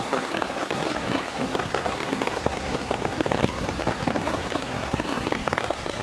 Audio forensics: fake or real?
fake